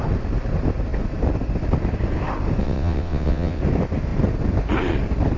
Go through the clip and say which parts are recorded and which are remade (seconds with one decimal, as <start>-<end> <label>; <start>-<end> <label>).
0.0-2.6 recorded; 2.6-3.6 remade; 3.6-5.4 recorded